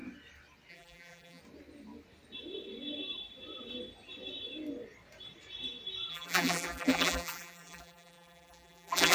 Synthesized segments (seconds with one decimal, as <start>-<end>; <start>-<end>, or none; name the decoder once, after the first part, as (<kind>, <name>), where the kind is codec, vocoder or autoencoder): 0.7-1.4 (vocoder, BigVGAN v2); 6.1-9.1